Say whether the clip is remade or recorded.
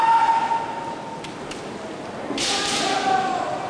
recorded